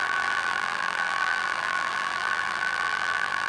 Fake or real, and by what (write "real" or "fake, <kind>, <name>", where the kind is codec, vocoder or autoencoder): fake, vocoder, BigVGAN v2